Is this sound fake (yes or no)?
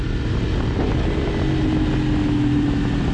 no